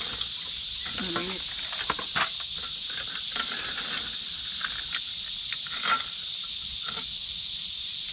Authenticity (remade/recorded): recorded